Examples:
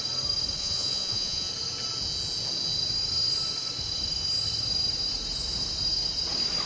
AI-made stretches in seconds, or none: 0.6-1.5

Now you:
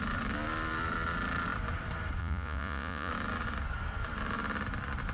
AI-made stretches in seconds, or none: 2.2-3.1

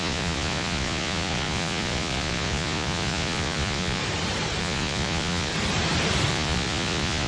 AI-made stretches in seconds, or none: 0.0-4.0; 4.6-5.5; 6.3-7.3

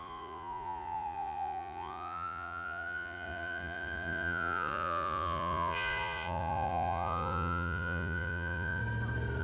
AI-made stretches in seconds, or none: 0.0-8.8